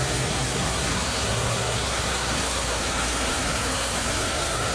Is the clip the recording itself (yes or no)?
no